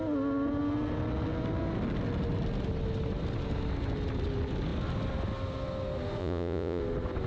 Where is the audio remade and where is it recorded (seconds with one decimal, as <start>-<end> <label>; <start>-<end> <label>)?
0.0-6.2 recorded; 6.2-6.8 remade; 6.8-7.3 recorded